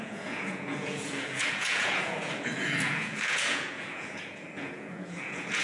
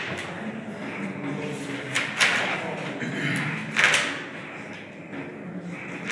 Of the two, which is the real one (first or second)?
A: second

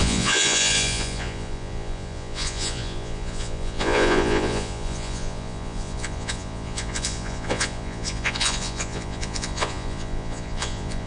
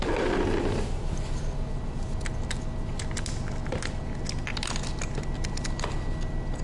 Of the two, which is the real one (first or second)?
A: second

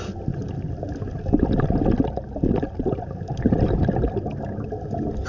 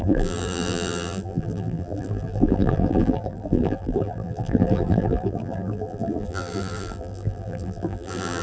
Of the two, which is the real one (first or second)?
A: first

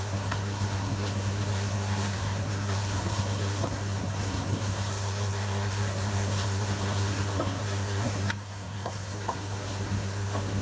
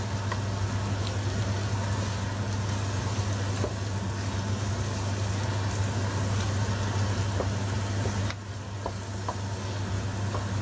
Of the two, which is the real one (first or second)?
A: second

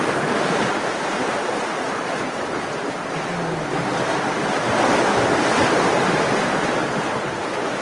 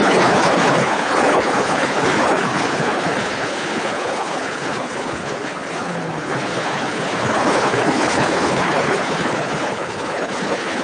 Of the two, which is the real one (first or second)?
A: first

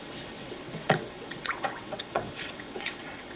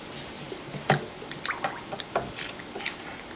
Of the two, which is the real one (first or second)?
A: second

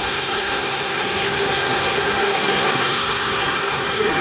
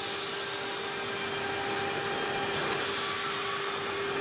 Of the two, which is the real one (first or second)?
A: second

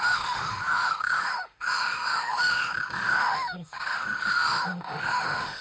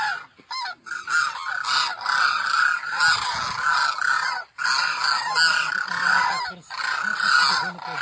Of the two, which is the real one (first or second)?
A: second